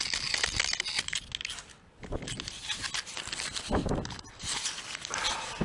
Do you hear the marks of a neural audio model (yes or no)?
no